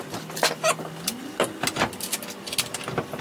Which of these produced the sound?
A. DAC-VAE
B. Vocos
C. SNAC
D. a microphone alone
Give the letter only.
D